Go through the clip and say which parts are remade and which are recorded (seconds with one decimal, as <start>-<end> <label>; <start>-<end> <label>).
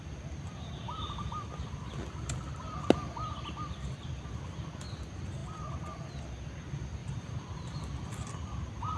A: 0.0-7.0 recorded; 7.0-7.8 remade; 7.8-9.0 recorded